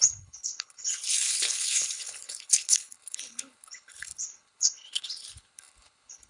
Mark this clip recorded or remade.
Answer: remade